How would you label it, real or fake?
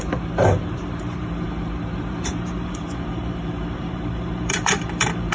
fake